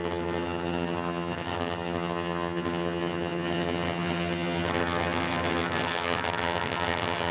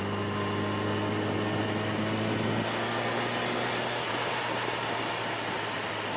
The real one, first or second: second